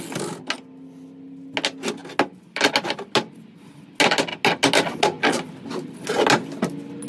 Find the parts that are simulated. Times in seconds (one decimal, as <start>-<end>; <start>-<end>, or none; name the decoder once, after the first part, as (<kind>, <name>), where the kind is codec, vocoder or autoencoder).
none

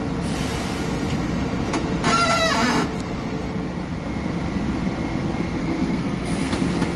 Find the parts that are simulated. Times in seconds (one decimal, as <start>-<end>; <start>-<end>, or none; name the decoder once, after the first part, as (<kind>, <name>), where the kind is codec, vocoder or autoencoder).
5.6-6.5 (codec, SNAC)

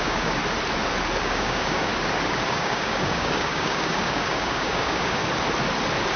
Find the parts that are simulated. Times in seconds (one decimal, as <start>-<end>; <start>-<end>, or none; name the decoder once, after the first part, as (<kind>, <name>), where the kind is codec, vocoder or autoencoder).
0.0-0.4 (codec, DAC); 1.2-1.9; 2.5-5.2

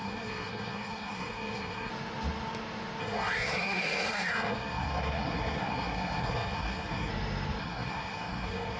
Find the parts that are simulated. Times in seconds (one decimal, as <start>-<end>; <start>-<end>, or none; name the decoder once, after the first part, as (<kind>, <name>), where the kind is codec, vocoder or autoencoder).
0.0-1.9 (codec, SNAC); 3.0-7.1; 7.6-8.8